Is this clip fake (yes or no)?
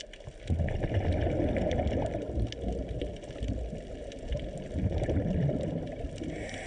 no